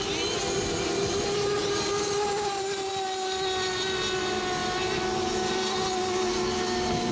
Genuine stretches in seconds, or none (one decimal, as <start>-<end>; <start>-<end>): 0.0-7.1